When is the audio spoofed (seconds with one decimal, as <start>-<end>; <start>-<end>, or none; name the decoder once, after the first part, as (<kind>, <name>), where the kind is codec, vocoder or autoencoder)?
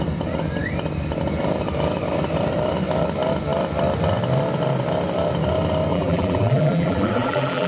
5.9-7.7 (vocoder, BigVGAN v2)